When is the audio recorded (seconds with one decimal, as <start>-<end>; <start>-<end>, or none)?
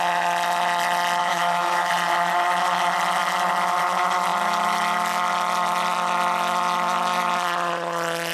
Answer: 0.0-1.2; 1.9-8.3